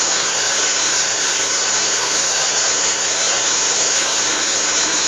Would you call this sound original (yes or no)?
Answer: no